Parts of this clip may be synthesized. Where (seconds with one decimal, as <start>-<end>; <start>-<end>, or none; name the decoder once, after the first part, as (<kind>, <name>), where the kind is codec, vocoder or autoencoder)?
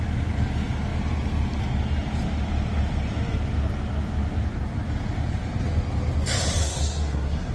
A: 6.6-7.5 (codec, SNAC)